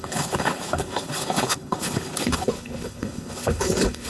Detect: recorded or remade remade